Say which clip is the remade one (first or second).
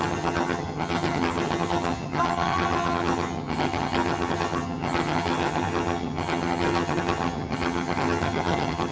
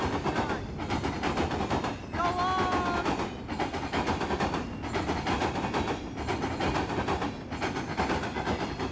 first